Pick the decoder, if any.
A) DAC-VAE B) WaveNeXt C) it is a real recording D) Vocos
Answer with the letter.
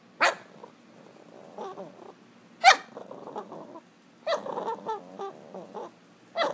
C